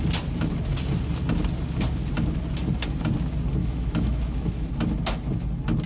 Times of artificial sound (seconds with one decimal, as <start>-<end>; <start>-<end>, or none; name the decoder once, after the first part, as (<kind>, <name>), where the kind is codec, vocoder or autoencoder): 3.6-4.7 (autoencoder, DAC-VAE)